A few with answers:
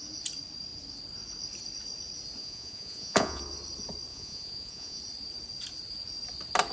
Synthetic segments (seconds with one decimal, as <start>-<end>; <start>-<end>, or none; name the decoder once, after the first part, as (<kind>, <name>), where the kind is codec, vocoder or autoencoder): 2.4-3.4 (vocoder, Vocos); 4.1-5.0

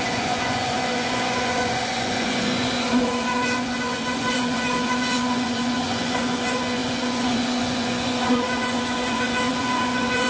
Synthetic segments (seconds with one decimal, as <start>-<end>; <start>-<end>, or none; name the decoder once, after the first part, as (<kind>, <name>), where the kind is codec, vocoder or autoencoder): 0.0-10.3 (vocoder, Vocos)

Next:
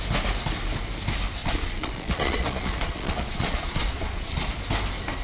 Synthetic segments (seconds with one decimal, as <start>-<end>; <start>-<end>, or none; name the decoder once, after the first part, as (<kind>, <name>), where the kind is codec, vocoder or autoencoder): 1.4-4.5 (vocoder, Vocos)

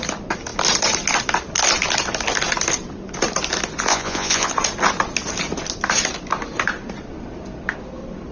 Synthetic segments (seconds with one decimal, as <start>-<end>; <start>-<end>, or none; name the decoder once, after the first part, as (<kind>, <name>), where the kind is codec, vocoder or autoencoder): 3.9-4.5 (vocoder, Vocos)

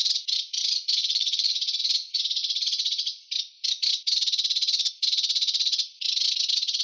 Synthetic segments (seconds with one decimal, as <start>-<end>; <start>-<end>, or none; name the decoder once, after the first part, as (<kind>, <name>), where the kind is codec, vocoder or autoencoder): 1.0-1.8 (vocoder, Vocos)